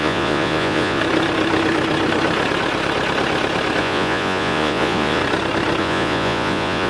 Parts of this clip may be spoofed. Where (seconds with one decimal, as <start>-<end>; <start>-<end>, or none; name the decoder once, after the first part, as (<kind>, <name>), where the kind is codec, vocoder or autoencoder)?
0.0-1.0 (vocoder, Vocos); 3.8-5.2; 5.8-6.9